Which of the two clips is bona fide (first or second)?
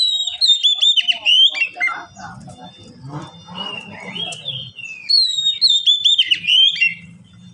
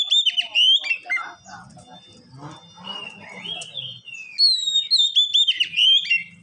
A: second